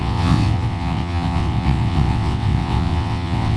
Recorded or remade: remade